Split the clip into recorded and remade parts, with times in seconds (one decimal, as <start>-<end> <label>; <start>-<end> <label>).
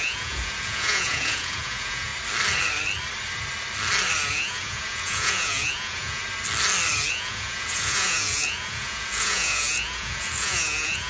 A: 0.0-2.1 remade; 2.1-4.3 recorded; 4.3-6.2 remade; 6.2-7.1 recorded; 7.1-11.1 remade